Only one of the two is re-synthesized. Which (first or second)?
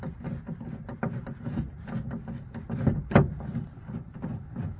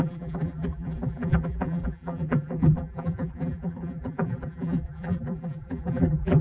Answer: second